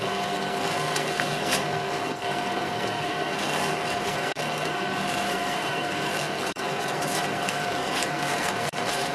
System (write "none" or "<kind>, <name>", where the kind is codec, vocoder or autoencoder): codec, SNAC